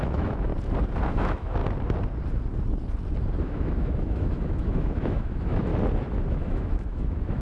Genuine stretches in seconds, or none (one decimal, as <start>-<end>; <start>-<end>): 0.5-1.1; 1.6-3.4; 5.7-6.3